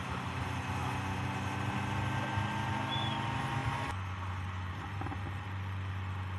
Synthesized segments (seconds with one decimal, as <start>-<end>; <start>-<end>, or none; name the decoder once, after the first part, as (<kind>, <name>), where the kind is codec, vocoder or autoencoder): none